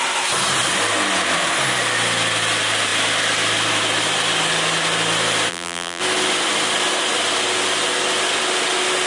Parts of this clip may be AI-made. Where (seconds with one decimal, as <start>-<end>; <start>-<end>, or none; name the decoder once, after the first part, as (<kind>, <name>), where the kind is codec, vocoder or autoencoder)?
5.5-6.0 (vocoder, BigVGAN v2)